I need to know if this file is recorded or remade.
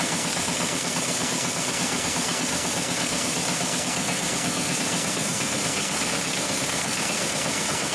remade